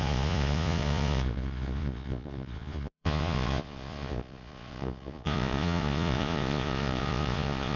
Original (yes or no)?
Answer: no